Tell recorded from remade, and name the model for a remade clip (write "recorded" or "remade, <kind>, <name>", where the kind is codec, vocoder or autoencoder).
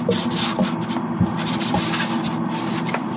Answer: recorded